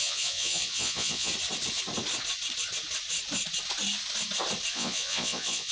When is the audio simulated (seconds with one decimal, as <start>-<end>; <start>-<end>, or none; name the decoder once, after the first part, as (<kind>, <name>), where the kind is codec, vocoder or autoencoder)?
0.0-1.3 (vocoder, Vocos); 4.7-5.7